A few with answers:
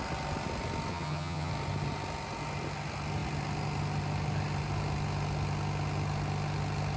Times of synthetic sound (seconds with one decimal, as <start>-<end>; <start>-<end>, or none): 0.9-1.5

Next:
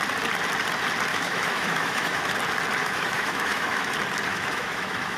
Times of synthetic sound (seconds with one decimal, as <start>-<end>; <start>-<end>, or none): 1.1-2.3; 2.8-3.9; 4.3-5.2

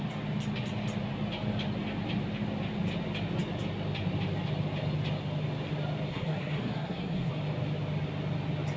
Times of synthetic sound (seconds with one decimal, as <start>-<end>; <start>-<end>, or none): 6.1-7.3